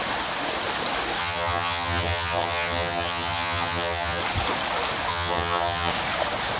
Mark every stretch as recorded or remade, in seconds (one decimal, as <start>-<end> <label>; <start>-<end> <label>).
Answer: 0.0-1.2 recorded; 1.2-4.2 remade; 4.2-5.1 recorded; 5.1-5.9 remade; 5.9-6.6 recorded